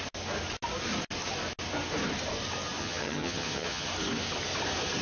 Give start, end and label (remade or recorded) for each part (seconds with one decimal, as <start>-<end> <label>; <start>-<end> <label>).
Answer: 0.0-2.8 recorded; 2.8-3.9 remade; 3.9-5.0 recorded